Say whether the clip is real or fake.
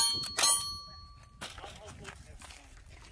real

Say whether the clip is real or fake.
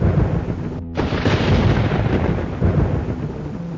real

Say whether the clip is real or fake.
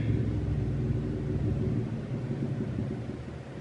real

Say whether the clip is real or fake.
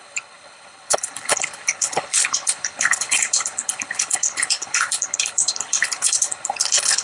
fake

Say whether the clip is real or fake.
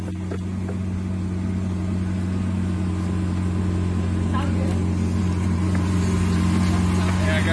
real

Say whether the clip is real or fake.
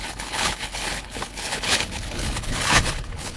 fake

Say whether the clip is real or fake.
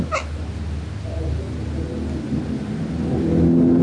real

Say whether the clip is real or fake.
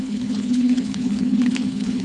fake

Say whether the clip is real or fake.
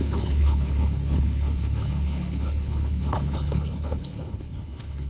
fake